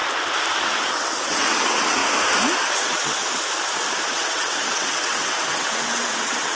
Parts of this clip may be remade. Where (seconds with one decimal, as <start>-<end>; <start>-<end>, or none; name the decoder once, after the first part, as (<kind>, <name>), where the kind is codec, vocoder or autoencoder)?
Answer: 0.7-2.0 (vocoder, WaveNeXt); 2.7-3.2; 4.1-6.5